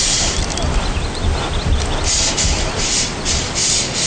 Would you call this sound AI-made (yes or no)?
no